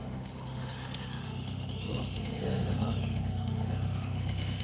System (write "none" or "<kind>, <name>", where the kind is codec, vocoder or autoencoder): autoencoder, DAC-VAE